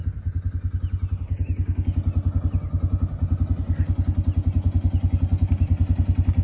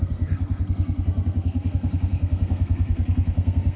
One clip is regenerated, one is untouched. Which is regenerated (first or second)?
second